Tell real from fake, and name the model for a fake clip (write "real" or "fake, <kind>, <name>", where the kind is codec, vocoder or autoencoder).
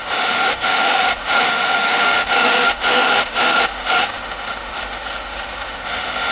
fake, autoencoder, DAC-VAE